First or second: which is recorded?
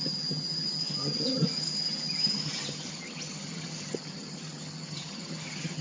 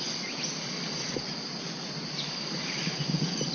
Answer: second